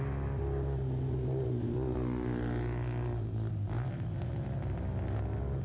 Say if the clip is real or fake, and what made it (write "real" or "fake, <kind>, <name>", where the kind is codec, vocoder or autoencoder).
real